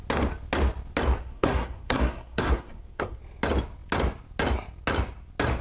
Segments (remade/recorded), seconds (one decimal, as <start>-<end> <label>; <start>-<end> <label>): 0.0-1.2 recorded; 1.2-3.2 remade; 3.2-5.6 recorded